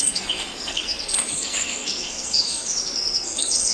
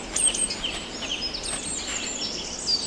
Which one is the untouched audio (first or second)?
second